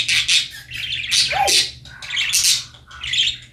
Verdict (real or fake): real